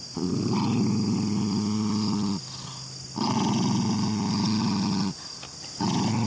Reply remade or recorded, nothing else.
recorded